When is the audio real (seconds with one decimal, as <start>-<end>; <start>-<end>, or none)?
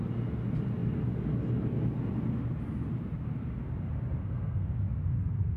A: 0.0-4.2; 4.7-5.6